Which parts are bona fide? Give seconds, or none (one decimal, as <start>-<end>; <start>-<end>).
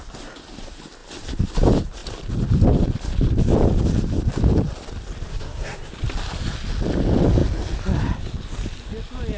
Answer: 0.0-5.3; 5.9-9.4